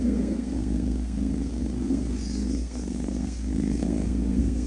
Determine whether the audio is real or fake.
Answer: fake